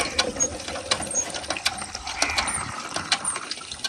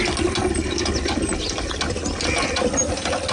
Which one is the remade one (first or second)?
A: first